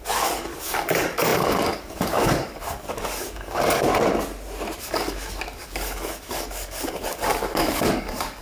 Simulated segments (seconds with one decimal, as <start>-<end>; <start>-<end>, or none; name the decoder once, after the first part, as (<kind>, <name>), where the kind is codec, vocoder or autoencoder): 0.0-3.9 (codec, DAC); 4.8-8.4